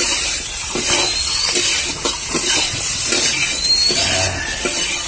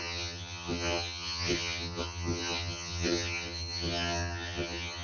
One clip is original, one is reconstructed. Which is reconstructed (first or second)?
second